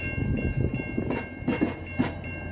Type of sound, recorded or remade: recorded